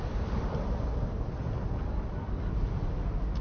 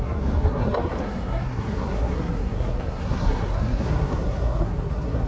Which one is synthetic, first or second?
second